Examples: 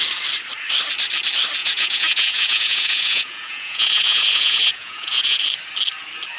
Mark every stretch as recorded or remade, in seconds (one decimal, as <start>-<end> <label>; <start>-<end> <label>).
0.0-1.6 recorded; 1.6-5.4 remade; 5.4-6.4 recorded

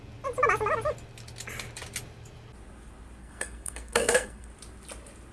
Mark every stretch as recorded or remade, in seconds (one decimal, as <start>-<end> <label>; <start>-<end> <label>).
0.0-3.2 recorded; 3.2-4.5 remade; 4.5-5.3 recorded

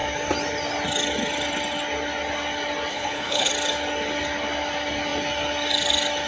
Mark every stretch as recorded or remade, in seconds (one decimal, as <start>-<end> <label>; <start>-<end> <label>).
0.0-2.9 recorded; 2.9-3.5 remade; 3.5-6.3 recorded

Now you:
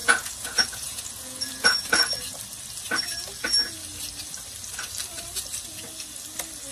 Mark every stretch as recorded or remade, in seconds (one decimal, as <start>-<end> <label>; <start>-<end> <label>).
0.0-2.2 remade; 2.2-6.7 recorded

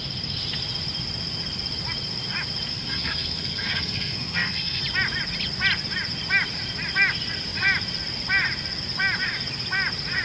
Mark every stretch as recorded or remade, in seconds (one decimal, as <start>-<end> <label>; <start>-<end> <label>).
0.0-2.7 recorded; 2.7-4.8 remade; 4.8-10.2 recorded